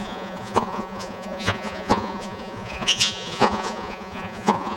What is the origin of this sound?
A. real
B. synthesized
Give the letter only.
B